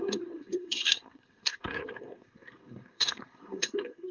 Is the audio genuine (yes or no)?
no